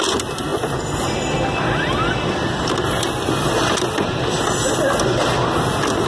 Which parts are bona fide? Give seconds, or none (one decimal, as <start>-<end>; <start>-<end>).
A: 0.0-6.1